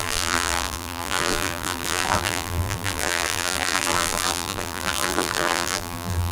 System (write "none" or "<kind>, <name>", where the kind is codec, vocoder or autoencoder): vocoder, BigVGAN v2